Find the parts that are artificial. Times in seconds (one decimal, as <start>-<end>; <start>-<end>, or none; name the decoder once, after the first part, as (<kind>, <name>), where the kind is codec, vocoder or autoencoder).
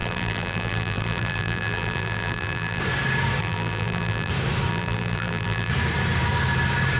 0.0-2.8 (vocoder, BigVGAN v2); 3.4-4.3; 4.7-5.7